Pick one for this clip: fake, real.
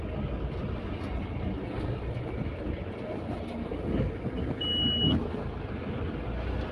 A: real